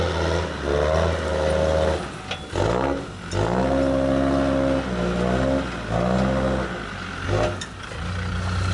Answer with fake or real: real